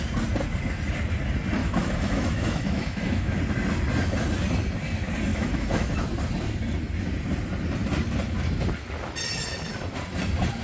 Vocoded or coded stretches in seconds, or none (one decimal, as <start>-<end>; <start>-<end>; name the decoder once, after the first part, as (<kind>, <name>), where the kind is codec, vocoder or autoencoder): 1.6-3.4 (autoencoder, DAC-VAE); 5.3-5.9